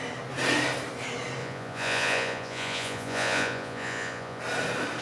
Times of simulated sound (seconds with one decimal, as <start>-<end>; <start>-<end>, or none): 1.4-4.4